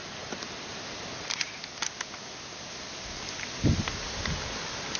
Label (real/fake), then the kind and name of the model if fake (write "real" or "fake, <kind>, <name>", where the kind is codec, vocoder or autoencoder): real